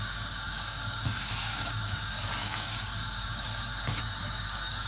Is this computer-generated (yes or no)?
yes